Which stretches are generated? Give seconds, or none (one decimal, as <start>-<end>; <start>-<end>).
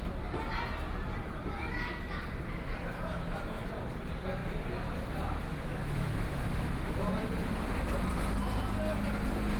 3.1-3.7; 5.5-7.2